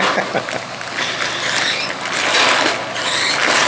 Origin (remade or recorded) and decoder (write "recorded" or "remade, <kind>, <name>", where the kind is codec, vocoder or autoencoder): recorded